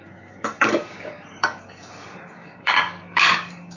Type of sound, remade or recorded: remade